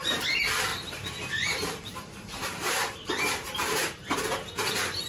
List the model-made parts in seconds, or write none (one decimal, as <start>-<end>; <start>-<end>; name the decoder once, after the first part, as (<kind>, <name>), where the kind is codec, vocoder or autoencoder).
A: 0.7-3.8 (vocoder, BigVGAN v2)